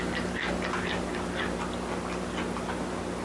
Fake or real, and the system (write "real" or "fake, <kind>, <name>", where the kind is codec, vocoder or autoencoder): real